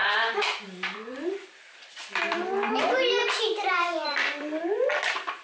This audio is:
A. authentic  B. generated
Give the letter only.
B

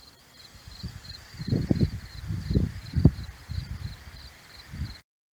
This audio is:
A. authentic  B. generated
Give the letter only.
B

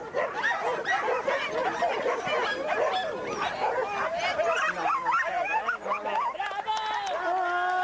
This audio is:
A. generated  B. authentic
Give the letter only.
B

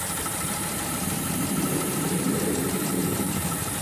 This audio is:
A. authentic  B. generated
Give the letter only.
B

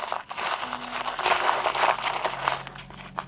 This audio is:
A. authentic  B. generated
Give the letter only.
A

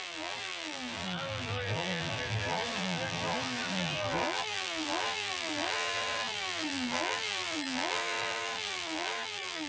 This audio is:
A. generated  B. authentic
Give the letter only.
A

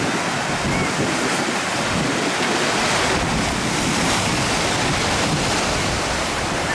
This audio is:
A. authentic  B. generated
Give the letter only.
A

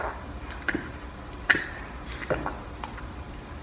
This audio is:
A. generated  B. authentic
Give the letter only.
A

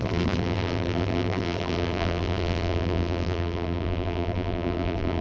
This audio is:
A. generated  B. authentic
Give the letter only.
A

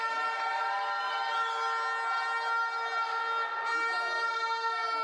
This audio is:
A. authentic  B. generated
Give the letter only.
A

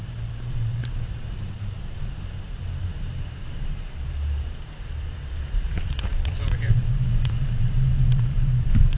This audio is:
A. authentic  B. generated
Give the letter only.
B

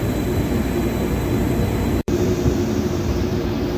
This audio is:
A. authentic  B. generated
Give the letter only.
B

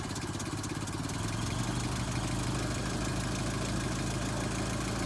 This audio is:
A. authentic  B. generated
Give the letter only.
A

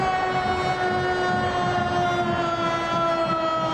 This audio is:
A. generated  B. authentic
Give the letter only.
B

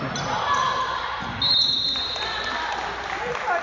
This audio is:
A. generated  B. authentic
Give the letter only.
A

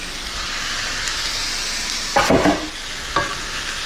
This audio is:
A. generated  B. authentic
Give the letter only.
B